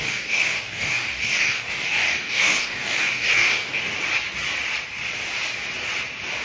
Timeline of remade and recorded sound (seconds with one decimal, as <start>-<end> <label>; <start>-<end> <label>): 0.0-3.8 remade; 3.8-6.4 recorded